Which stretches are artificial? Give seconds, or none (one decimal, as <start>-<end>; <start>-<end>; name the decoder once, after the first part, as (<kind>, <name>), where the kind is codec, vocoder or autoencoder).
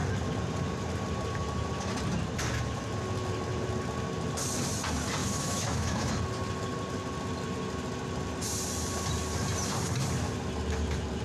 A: 5.2-6.1 (autoencoder, DAC-VAE)